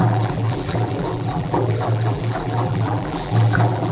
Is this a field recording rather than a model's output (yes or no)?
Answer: no